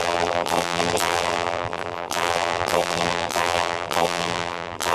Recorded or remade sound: remade